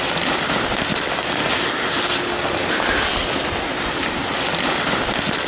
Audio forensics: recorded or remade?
recorded